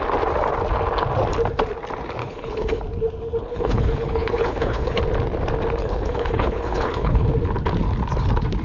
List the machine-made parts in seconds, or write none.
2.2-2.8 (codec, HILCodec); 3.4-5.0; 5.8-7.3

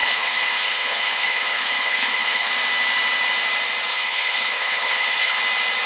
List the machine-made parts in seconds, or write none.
0.0-2.5 (codec, HILCodec); 3.9-5.4